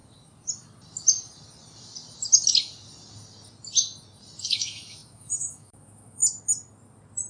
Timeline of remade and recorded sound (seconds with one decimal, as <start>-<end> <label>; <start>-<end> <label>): 0.0-4.4 recorded; 4.4-6.2 remade; 6.2-7.3 recorded